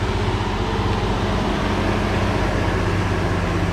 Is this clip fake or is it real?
real